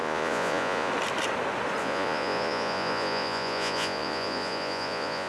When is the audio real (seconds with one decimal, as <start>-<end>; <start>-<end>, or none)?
0.9-1.8